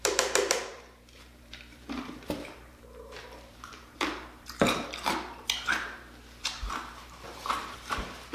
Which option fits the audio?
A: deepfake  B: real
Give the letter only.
A